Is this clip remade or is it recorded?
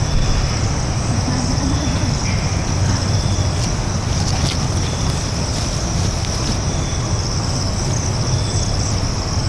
recorded